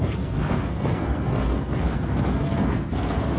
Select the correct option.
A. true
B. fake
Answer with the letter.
B